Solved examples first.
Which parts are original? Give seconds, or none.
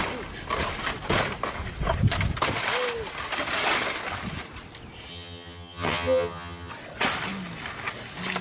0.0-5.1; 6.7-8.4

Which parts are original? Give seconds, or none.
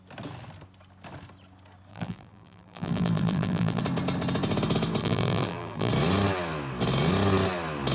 0.0-1.9; 3.8-5.0; 5.9-7.9